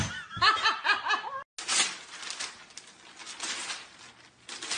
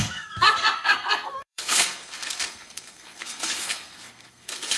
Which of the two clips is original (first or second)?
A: first